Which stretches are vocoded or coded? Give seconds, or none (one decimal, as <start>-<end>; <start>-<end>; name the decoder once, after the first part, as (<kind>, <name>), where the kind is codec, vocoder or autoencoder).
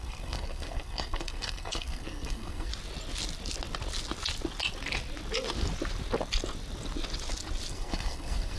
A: 0.0-2.7 (codec, SNAC); 7.7-8.6